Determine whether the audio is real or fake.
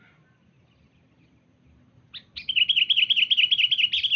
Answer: real